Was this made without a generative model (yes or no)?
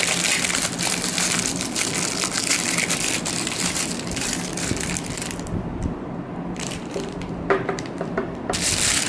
no